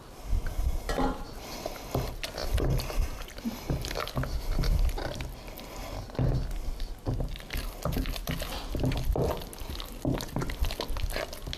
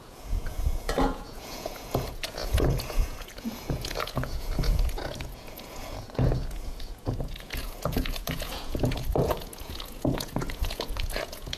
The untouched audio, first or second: first